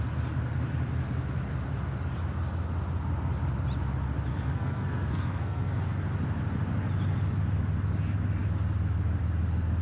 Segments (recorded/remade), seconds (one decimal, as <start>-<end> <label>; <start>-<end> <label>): 0.0-4.3 recorded; 4.3-5.8 remade; 5.8-9.8 recorded